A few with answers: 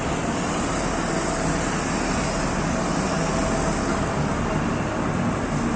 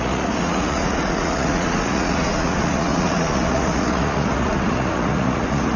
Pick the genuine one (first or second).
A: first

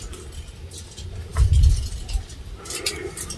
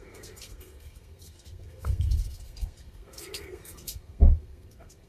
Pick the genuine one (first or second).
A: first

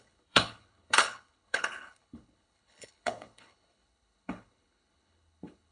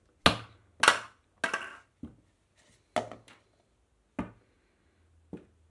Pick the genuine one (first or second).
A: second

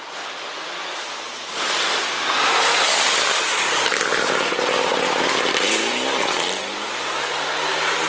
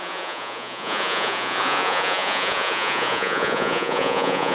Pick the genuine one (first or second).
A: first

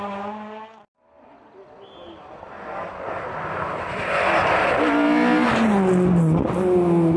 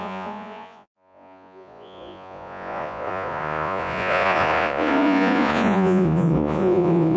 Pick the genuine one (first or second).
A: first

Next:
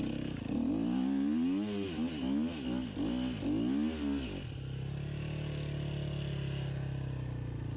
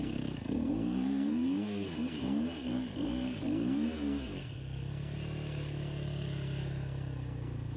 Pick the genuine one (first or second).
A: first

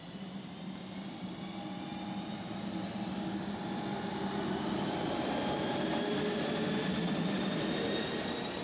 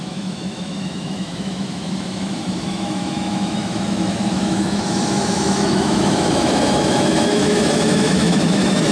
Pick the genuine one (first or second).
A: first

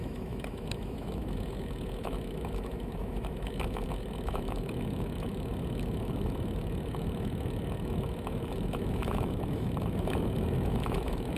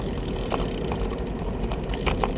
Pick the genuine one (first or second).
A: second